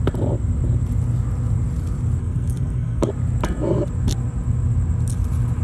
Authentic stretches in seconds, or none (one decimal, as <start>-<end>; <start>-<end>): 0.0-2.2; 3.1-5.6